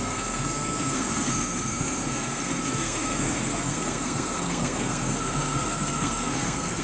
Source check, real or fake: fake